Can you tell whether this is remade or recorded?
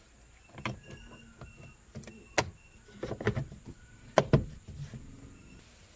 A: recorded